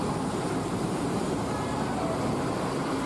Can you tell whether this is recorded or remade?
remade